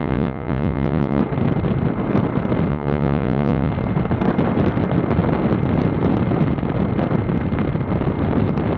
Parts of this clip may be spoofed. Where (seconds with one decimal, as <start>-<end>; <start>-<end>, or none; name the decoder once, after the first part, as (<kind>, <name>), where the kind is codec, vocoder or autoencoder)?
0.0-1.2 (vocoder, Vocos); 2.7-3.7